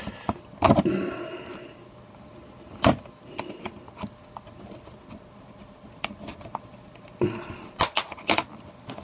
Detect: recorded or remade recorded